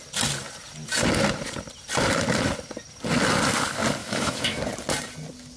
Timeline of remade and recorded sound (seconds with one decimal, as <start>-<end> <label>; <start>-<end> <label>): 0.0-4.0 recorded; 4.0-4.6 remade; 4.6-5.6 recorded